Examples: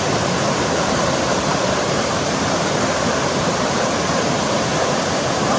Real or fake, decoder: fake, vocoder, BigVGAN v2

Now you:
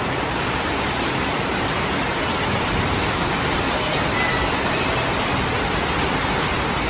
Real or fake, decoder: real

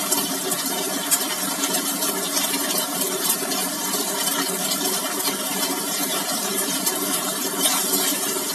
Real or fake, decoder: fake, vocoder, BigVGAN v2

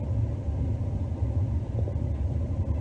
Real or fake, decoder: real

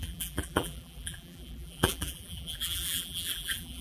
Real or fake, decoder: fake, vocoder, BigVGAN v2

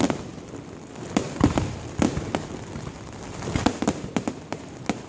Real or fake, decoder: fake, vocoder, BigVGAN v2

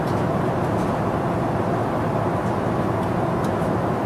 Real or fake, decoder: real